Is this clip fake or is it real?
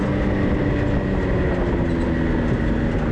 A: real